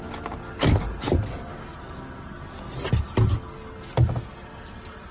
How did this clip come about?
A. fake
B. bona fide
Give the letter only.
B